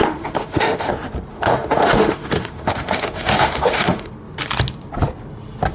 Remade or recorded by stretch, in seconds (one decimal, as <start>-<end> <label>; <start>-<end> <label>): 0.0-0.9 remade; 0.9-1.3 recorded; 1.3-4.1 remade; 4.1-5.7 recorded